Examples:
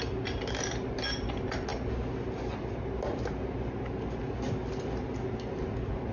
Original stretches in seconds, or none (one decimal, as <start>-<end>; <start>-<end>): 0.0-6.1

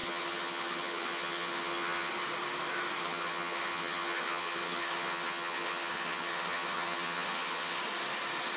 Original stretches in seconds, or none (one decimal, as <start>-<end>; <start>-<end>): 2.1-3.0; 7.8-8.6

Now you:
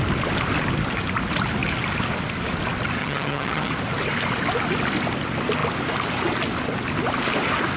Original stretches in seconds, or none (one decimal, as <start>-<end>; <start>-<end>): 0.0-3.0; 3.7-7.8

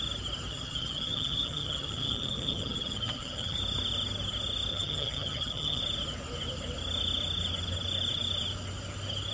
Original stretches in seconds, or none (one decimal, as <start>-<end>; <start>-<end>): 0.0-0.5; 3.6-4.7; 5.8-9.3